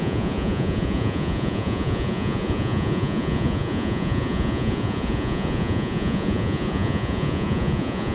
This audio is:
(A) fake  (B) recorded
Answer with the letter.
A